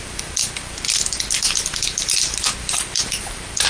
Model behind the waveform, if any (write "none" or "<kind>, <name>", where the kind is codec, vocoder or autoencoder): none